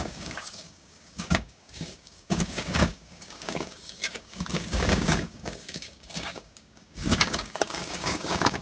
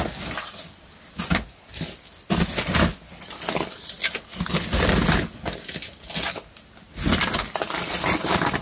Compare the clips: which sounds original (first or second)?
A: second